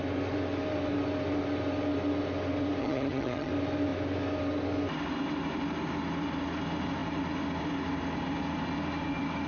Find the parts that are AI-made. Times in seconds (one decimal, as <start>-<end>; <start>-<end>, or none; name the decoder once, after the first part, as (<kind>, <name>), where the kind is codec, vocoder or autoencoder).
2.8-3.5 (vocoder, HiFi-GAN)

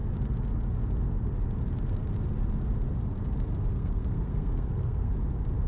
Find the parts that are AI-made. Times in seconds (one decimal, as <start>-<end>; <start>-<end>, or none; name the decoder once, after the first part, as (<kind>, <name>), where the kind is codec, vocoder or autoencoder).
3.7-5.1 (codec, SNAC)

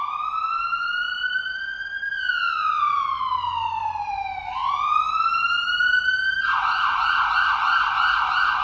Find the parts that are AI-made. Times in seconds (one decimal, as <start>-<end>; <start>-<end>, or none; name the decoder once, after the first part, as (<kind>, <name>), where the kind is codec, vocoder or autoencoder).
none